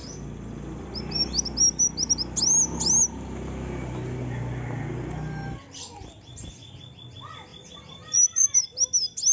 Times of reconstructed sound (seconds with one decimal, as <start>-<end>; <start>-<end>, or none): 7.5-8.6